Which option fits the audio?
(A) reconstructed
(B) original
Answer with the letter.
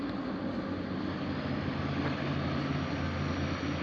B